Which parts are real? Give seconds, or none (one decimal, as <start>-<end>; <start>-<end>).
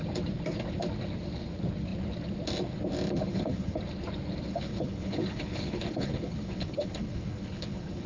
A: 0.0-3.3; 3.8-4.5